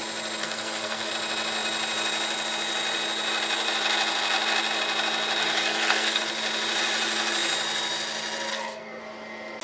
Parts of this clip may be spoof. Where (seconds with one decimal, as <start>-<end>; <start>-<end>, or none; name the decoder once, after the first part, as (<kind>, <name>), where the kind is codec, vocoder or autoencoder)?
0.4-1.1 (codec, SNAC); 5.4-6.2; 8.5-9.0